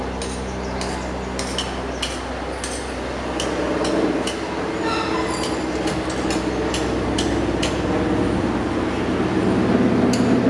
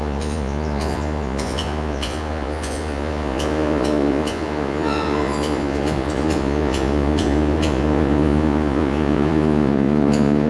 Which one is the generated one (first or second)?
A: second